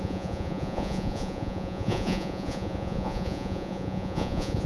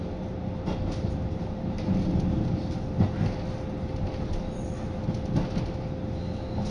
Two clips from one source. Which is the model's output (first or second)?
first